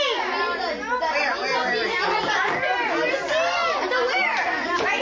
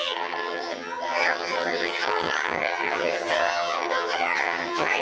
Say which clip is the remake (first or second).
second